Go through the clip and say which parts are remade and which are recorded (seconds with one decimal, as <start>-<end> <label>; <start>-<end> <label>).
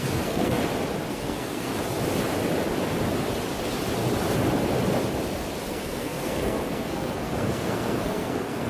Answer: 0.0-0.6 remade; 0.6-1.1 recorded; 1.1-1.7 remade; 1.7-5.7 recorded; 5.7-8.7 remade